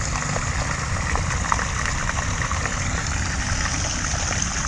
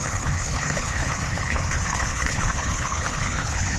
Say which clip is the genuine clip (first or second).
first